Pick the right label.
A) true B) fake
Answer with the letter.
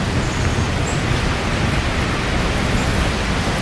A